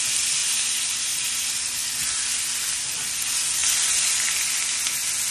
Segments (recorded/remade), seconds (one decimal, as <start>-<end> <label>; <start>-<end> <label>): 0.0-5.3 recorded